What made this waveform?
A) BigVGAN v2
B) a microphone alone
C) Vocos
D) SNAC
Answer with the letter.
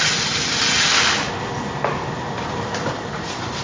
B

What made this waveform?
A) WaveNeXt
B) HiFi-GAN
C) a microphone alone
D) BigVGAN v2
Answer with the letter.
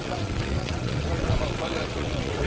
A